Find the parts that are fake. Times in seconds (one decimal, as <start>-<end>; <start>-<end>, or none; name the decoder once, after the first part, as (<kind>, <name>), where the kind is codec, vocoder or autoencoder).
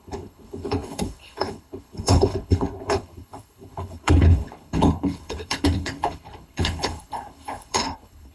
0.0-8.3 (codec, HILCodec)